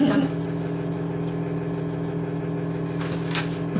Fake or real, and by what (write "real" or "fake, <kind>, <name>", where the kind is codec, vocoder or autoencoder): real